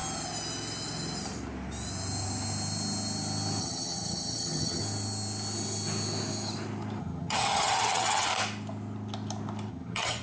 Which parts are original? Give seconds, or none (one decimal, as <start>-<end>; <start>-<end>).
0.0-3.6; 4.8-7.0; 8.3-9.7